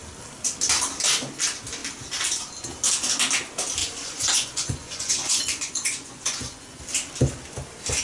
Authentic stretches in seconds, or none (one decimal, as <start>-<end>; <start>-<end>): 0.0-3.8; 6.8-8.0